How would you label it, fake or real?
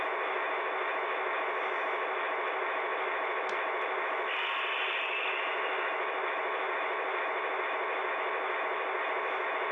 real